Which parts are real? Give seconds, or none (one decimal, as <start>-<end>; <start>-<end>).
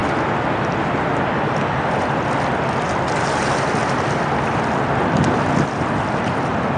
0.0-6.8